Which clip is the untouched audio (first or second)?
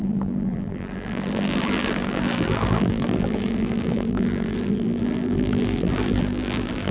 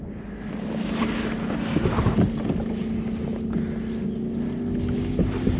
second